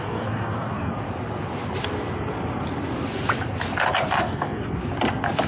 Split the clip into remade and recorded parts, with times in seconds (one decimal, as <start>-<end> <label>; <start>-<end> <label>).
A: 0.0-0.9 remade; 0.9-4.2 recorded; 4.2-4.8 remade; 4.8-5.5 recorded

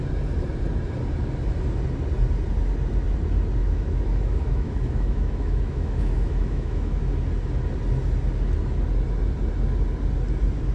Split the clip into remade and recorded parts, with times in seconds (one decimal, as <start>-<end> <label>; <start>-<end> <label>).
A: 0.0-3.6 recorded; 3.6-7.1 remade; 7.1-10.7 recorded

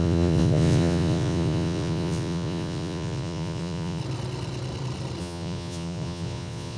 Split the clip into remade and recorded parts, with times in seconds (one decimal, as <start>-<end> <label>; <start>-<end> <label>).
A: 0.0-4.0 remade; 4.0-5.2 recorded; 5.2-6.8 remade

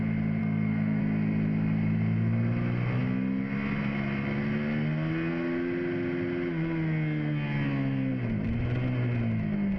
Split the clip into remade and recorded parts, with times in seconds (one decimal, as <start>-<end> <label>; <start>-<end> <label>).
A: 0.0-0.4 recorded; 0.4-1.0 remade; 1.0-9.8 recorded

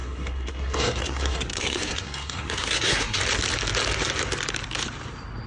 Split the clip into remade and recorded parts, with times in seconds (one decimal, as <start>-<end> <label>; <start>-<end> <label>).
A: 0.0-3.2 remade; 3.2-5.5 recorded

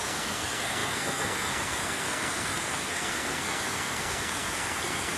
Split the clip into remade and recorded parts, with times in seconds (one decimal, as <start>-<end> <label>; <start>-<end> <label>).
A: 0.0-5.2 remade

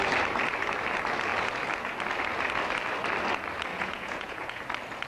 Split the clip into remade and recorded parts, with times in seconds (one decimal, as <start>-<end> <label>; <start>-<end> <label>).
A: 0.0-3.7 recorded; 3.7-4.6 remade; 4.6-5.1 recorded